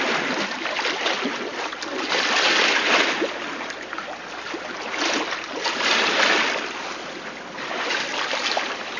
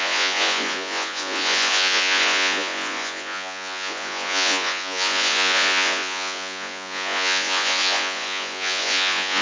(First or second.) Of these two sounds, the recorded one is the first